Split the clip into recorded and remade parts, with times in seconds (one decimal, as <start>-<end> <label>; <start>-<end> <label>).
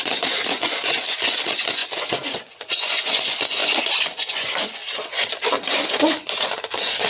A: 0.0-4.8 remade; 4.8-5.7 recorded; 5.7-7.1 remade